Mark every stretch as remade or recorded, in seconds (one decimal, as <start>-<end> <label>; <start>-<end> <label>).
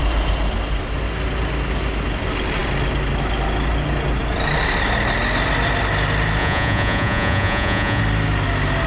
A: 0.0-6.4 recorded; 6.4-8.0 remade; 8.0-8.9 recorded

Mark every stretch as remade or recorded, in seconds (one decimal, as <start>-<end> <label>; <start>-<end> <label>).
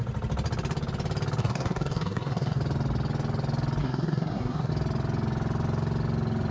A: 0.0-1.4 recorded; 1.4-2.6 remade; 2.6-3.8 recorded; 3.8-4.7 remade; 4.7-6.5 recorded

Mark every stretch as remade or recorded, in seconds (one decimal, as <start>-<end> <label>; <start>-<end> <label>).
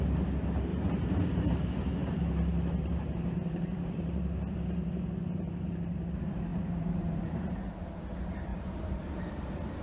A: 0.0-0.7 recorded; 0.7-1.8 remade; 1.8-2.8 recorded; 2.8-5.4 remade; 5.4-6.5 recorded; 6.5-7.7 remade; 7.7-8.5 recorded; 8.5-9.2 remade; 9.2-9.8 recorded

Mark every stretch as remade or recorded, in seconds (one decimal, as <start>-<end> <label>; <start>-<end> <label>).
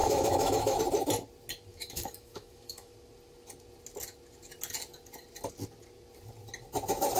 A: 0.0-0.8 remade; 0.8-1.7 recorded; 1.7-2.9 remade; 2.9-7.2 recorded